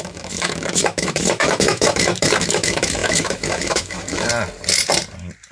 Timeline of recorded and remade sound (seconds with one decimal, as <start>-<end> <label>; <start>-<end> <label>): 0.0-4.3 remade; 4.3-5.5 recorded